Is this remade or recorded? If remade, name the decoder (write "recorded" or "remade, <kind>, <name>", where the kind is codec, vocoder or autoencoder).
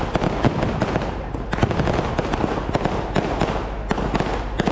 recorded